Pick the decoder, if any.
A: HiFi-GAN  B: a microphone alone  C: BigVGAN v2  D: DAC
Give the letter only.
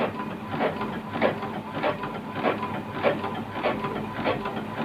B